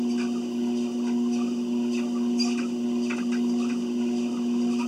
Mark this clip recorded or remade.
recorded